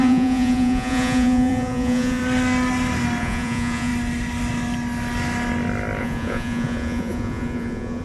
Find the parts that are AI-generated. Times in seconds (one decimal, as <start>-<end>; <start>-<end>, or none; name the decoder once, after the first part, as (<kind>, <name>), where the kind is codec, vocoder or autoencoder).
0.0-2.2 (vocoder, Vocos); 3.2-3.9; 6.0-8.0